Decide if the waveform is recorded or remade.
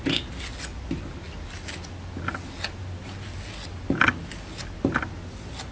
recorded